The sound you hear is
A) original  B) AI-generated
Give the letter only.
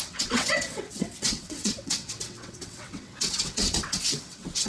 B